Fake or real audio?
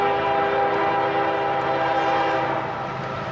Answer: real